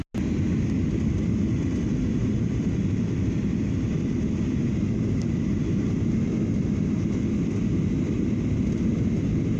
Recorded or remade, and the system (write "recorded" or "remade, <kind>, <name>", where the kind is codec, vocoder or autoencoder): recorded